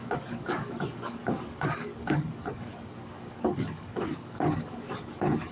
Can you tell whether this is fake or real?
fake